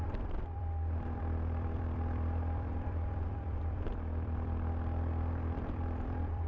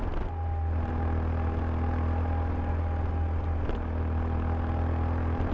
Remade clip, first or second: first